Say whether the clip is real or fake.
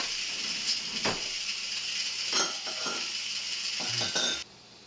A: real